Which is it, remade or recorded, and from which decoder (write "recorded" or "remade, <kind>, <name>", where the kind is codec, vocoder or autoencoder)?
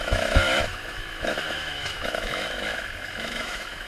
remade, autoencoder, DAC-VAE